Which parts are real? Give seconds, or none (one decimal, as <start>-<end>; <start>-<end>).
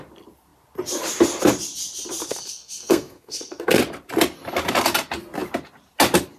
0.0-2.2; 3.8-6.4